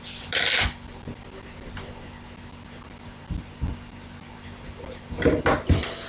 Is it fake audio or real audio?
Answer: real